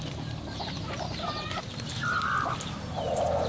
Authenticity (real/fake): real